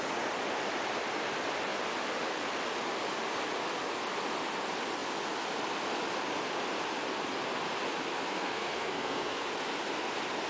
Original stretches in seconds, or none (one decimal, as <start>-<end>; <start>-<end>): 0.0-8.3; 9.5-10.5